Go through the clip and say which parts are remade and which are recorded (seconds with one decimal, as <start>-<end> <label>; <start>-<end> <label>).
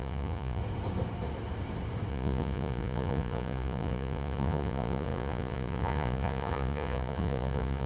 0.0-0.6 remade; 0.6-2.1 recorded; 2.1-7.9 remade